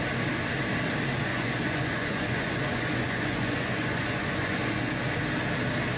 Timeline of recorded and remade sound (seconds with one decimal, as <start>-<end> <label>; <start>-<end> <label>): 0.0-1.3 recorded; 1.3-4.9 remade; 4.9-6.0 recorded